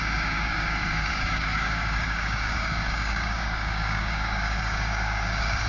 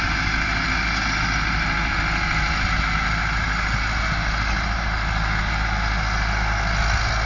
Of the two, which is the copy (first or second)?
first